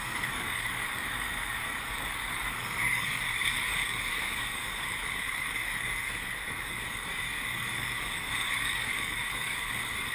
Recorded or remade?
remade